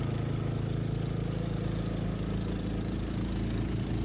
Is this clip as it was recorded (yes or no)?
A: yes